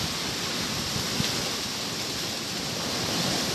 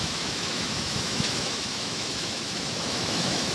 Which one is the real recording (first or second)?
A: first